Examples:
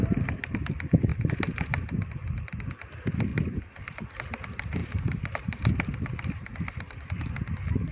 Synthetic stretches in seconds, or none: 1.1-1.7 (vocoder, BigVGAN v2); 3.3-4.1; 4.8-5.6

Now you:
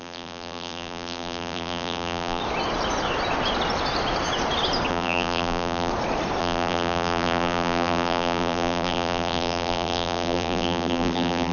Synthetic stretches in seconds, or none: 0.0-2.4 (vocoder, BigVGAN v2); 4.9-5.9; 6.4-11.5

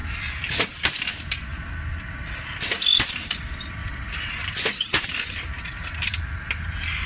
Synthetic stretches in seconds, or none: 0.0-0.7 (vocoder, BigVGAN v2); 1.5-2.0; 3.8-6.6

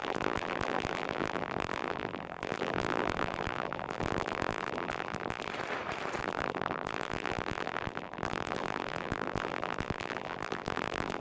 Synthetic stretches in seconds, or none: 0.0-5.5 (vocoder, BigVGAN v2); 6.2-11.2

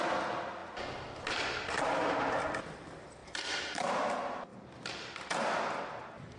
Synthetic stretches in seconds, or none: 3.2-3.9 (vocoder, BigVGAN v2)

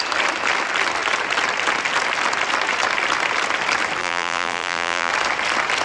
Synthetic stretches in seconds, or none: 4.0-5.1 (vocoder, BigVGAN v2)

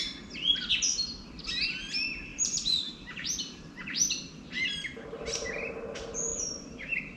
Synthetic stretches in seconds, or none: 2.3-4.8 (vocoder, BigVGAN v2); 6.3-7.2

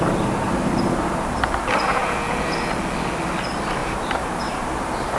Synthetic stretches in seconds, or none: 3.8-4.4 (vocoder, BigVGAN v2)